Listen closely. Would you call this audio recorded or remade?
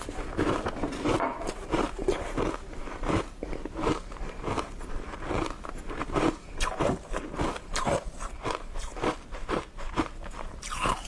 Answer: remade